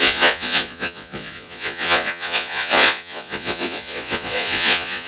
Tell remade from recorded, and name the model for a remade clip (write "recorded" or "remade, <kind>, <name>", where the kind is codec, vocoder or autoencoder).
remade, vocoder, Vocos